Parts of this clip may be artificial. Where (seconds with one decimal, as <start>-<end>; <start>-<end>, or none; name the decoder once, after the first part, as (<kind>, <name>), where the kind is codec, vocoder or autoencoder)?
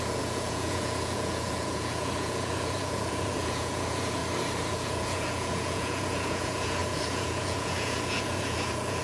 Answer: 0.0-4.2 (vocoder, Vocos); 4.7-9.0